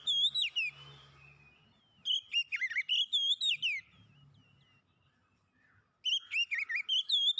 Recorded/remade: recorded